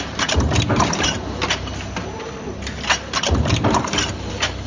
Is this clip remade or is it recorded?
recorded